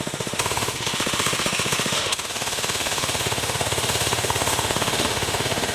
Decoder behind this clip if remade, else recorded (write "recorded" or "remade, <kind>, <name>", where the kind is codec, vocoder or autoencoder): remade, autoencoder, DAC-VAE